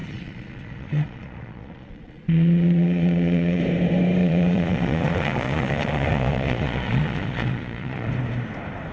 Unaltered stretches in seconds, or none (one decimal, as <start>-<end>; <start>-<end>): 3.6-4.2; 8.1-8.9